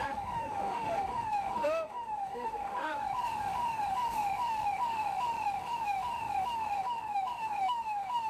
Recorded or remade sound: remade